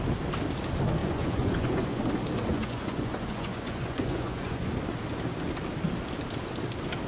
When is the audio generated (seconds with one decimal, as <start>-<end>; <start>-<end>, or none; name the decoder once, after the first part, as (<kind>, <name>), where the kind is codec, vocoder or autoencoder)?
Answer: 1.0-2.0 (vocoder, Vocos); 2.5-4.7